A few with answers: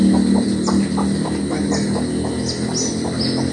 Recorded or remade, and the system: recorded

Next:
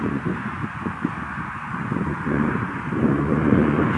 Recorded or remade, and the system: remade, vocoder, Vocos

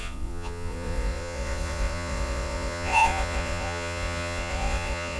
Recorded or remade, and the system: remade, vocoder, Vocos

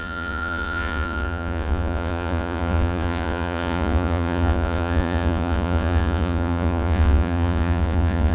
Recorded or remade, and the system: remade, vocoder, Vocos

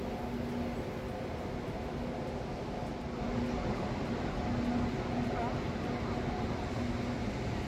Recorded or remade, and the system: recorded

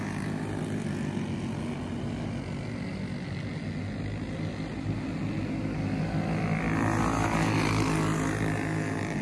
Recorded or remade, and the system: recorded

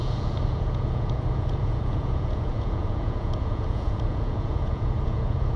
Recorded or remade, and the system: remade, vocoder, Vocos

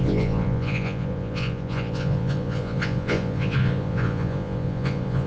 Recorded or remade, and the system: remade, vocoder, Vocos